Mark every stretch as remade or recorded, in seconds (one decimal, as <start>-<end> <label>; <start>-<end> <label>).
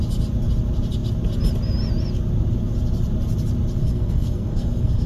0.0-3.8 recorded; 3.8-5.1 remade